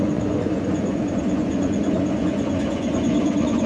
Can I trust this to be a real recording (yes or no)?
no